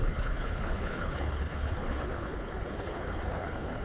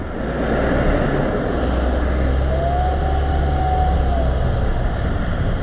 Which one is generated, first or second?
first